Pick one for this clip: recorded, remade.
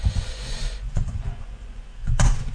remade